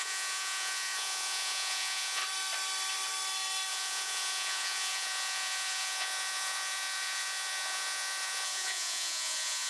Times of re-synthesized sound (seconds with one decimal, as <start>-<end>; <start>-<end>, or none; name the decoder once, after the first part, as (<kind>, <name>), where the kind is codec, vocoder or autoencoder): 0.0-2.2 (vocoder, Vocos); 3.7-9.7